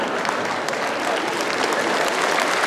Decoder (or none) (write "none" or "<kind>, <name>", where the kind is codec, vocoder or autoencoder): none